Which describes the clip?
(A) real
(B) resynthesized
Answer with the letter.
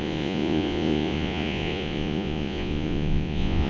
B